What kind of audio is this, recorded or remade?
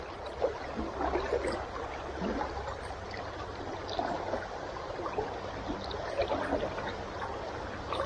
recorded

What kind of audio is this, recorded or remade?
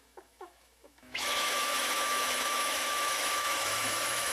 remade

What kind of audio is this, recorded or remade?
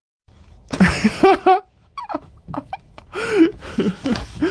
remade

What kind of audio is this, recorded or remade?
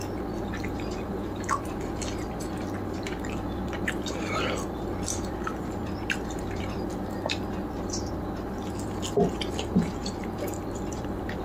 recorded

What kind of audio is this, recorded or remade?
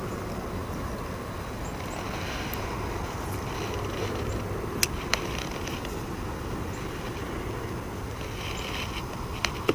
recorded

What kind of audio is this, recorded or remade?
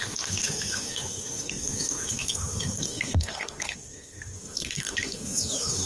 remade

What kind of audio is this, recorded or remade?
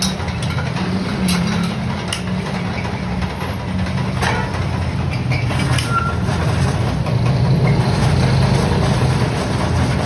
recorded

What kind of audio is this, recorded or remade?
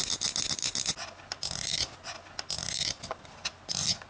recorded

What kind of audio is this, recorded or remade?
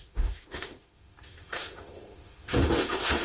remade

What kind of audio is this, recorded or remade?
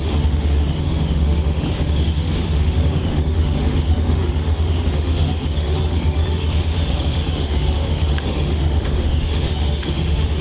remade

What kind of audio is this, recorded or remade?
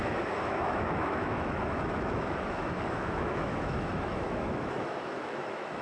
remade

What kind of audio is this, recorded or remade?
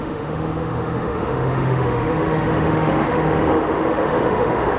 remade